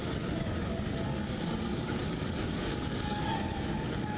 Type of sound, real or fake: fake